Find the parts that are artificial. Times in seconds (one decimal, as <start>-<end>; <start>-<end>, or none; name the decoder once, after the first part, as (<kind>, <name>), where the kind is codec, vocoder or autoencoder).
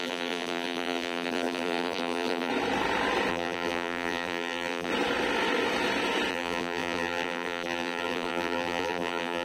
0.0-2.5 (vocoder, BigVGAN v2); 3.3-4.9; 6.3-9.4